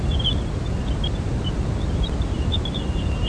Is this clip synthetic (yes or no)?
no